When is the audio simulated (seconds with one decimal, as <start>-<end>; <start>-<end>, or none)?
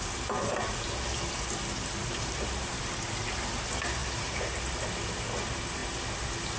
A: 2.0-2.8; 4.0-4.6